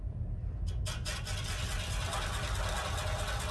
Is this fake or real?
real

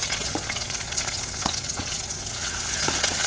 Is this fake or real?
fake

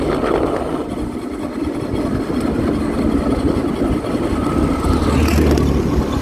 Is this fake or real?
real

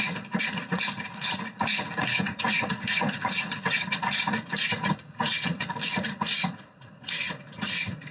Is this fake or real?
fake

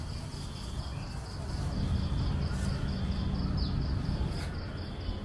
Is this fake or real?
real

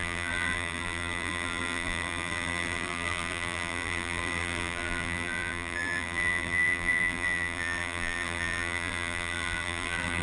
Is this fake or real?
fake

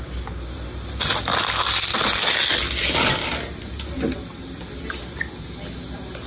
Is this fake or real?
real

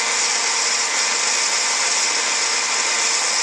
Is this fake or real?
real